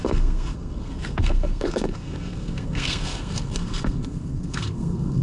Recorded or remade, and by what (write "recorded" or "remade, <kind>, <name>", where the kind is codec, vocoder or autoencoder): remade, codec, SNAC